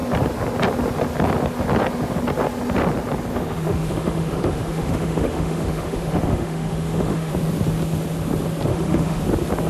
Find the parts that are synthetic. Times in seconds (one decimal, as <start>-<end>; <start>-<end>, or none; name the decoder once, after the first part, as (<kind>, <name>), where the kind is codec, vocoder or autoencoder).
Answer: 3.3-7.3 (autoencoder, DAC-VAE); 8.7-9.2